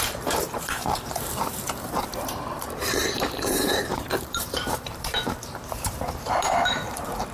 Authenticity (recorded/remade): remade